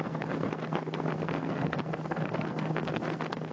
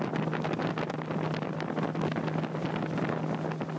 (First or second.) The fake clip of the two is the first